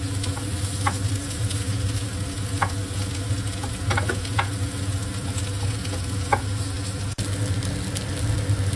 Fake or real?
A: real